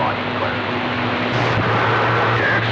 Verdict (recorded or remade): recorded